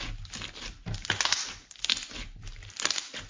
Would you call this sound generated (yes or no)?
no